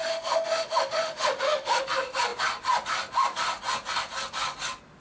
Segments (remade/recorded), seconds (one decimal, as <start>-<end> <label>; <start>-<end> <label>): 0.0-1.8 remade; 1.8-5.0 recorded